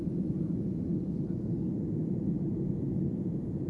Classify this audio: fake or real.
real